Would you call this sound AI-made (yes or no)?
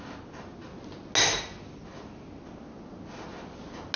no